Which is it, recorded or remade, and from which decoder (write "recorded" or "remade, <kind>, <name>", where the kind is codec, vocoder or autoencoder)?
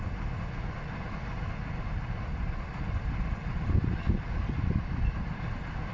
recorded